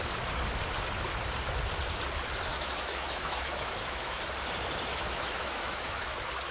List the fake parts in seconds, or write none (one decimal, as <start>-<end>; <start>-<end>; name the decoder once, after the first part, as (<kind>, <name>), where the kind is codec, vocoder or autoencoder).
2.5-4.2 (autoencoder, DAC-VAE); 4.9-6.1